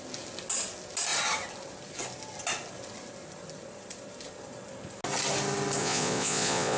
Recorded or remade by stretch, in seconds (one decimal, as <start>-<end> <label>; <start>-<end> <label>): 0.0-5.8 recorded; 5.8-6.8 remade